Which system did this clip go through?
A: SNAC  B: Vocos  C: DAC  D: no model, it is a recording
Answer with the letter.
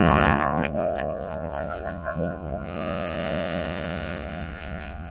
B